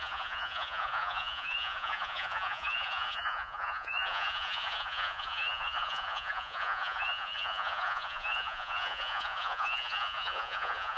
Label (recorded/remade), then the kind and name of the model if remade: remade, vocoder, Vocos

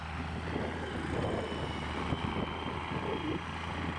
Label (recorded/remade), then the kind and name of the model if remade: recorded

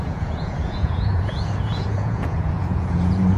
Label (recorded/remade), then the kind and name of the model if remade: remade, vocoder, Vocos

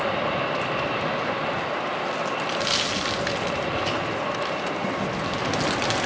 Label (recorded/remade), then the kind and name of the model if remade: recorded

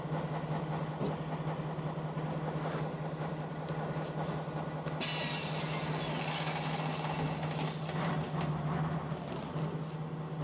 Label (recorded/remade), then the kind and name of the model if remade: recorded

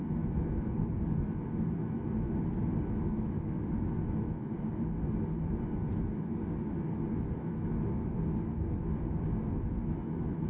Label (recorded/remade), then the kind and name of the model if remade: recorded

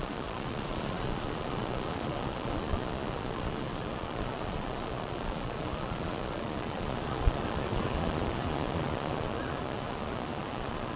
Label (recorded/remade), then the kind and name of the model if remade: remade, vocoder, Vocos